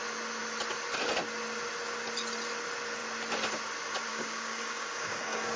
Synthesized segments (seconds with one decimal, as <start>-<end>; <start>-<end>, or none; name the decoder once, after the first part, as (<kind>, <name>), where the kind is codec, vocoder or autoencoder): 4.1-5.6 (codec, DAC)